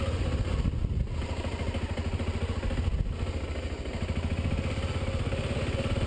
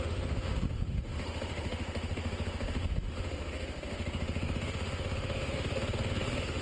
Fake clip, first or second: second